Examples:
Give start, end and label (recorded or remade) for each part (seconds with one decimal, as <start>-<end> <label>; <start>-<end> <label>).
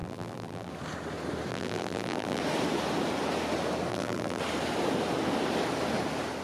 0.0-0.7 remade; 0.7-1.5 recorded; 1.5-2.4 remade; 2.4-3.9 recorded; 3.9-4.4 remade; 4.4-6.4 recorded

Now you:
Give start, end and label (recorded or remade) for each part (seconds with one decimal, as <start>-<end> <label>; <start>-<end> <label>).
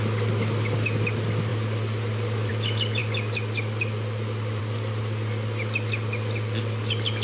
0.0-7.2 recorded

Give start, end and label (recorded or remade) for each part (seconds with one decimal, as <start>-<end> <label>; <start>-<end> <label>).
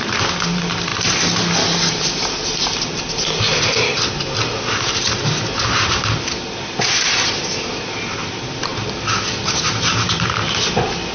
0.0-0.9 remade; 0.9-1.9 recorded; 1.9-11.1 remade